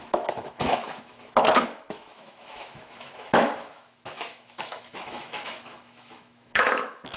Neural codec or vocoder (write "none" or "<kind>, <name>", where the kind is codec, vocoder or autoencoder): autoencoder, DAC-VAE